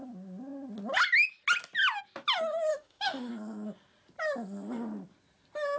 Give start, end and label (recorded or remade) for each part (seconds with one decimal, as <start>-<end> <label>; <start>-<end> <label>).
0.0-2.7 recorded; 2.7-3.3 remade; 3.3-5.8 recorded